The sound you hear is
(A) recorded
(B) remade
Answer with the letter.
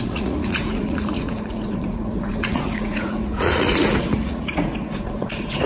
B